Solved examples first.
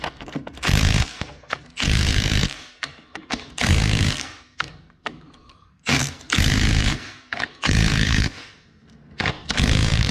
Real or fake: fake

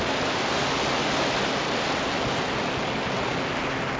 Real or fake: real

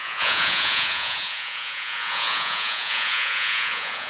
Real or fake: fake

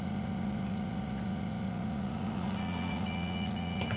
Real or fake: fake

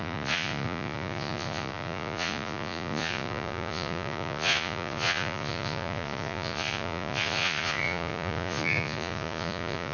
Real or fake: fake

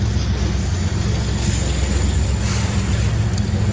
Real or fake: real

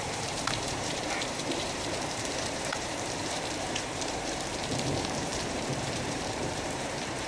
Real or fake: fake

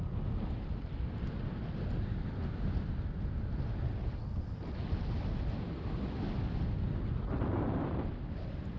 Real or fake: real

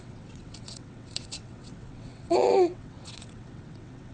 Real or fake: fake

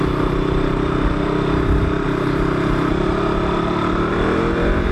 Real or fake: fake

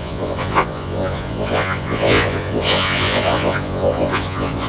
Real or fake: fake